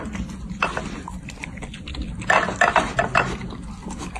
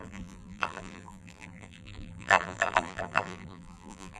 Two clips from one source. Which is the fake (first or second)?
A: second